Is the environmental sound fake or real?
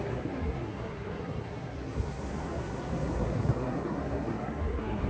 fake